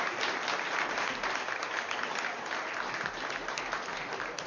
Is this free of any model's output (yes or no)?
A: yes